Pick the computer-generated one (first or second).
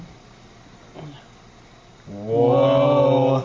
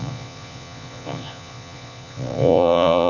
second